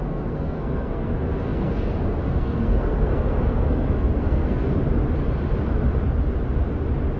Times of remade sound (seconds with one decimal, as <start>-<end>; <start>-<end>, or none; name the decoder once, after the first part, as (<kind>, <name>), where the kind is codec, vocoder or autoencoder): 0.0-4.6 (codec, SNAC)